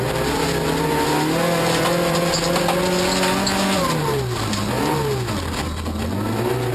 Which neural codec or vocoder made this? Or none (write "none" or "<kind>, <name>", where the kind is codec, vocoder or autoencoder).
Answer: none